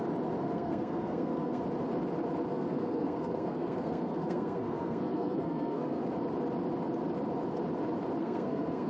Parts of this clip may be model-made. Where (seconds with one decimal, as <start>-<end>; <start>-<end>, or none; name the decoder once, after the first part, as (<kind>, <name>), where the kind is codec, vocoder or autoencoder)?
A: 0.4-1.6 (codec, SNAC); 2.5-6.0; 8.2-8.9